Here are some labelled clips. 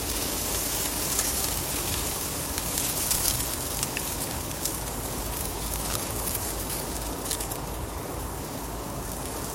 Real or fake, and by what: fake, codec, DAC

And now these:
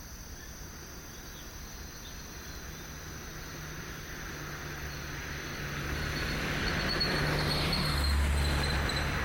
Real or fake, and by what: real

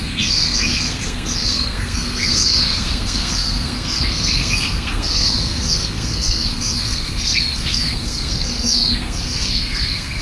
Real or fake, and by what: fake, codec, SNAC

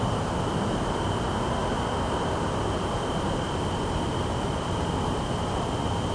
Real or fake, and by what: real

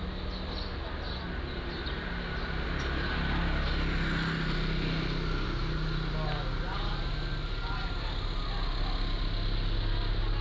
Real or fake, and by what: real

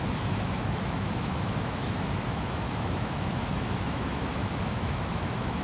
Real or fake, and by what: fake, autoencoder, DAC-VAE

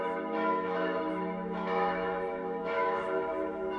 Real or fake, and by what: fake, autoencoder, DAC-VAE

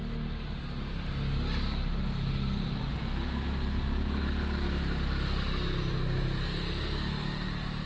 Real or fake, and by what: real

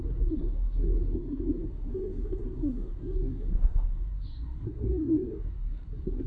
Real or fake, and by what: fake, codec, SNAC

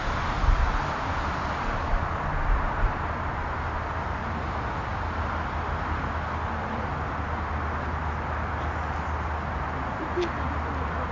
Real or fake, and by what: real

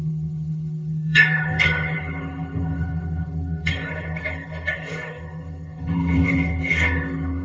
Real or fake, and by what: fake, codec, HILCodec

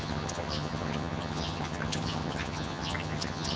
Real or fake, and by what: fake, vocoder, HiFi-GAN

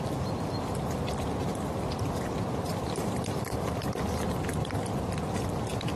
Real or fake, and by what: fake, vocoder, BigVGAN v2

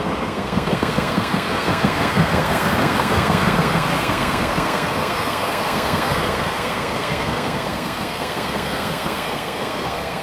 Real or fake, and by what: fake, codec, SNAC